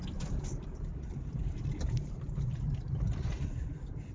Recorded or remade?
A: recorded